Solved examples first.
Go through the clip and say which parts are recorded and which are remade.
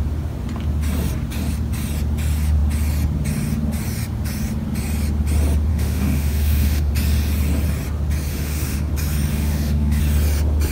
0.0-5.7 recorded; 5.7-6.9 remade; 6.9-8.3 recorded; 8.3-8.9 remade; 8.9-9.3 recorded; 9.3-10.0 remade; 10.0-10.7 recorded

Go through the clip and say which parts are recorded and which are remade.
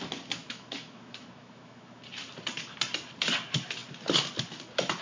0.0-0.4 recorded; 0.4-2.0 remade; 2.0-5.0 recorded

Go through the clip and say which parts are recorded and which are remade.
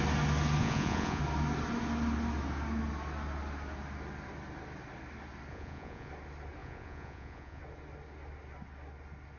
0.0-0.6 recorded; 0.6-1.2 remade; 1.2-5.5 recorded; 5.5-6.1 remade; 6.1-6.6 recorded; 6.6-7.6 remade; 7.6-9.4 recorded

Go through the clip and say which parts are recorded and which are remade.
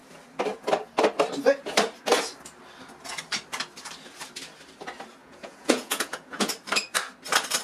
0.0-5.2 recorded; 5.2-6.5 remade; 6.5-7.6 recorded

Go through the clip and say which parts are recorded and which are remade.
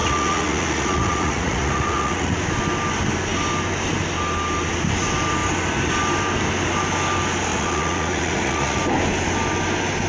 0.0-2.4 remade; 2.4-7.5 recorded; 7.5-8.8 remade; 8.8-10.1 recorded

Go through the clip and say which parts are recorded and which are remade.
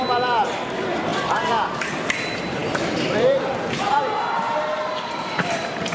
0.0-5.9 remade